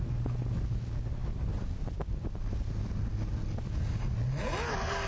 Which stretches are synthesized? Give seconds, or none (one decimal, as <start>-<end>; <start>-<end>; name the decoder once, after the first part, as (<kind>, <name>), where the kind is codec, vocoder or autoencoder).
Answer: none